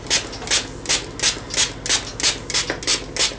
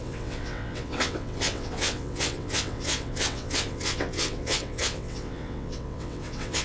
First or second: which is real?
first